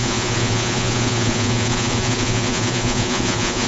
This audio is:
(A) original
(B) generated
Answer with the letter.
B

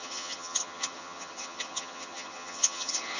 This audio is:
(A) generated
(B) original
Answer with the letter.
A